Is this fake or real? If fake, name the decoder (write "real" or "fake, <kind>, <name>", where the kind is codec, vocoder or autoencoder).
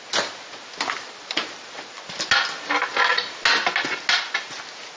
real